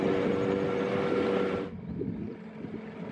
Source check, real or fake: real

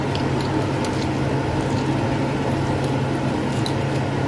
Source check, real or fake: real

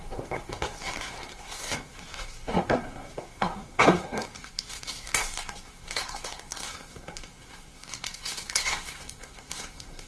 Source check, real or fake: fake